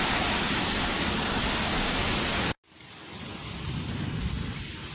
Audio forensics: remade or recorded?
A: recorded